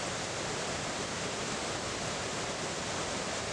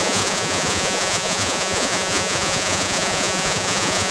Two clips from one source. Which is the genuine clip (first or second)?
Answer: first